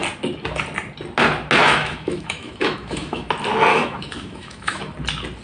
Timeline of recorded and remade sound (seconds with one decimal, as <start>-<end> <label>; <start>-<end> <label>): 0.0-1.6 recorded; 1.6-3.3 remade; 3.3-3.7 recorded; 3.7-4.8 remade; 4.8-5.4 recorded